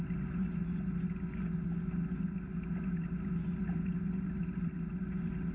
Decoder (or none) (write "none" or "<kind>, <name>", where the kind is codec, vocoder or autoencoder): none